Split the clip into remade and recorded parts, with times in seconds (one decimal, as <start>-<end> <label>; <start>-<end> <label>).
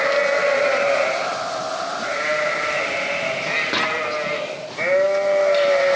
0.0-6.0 recorded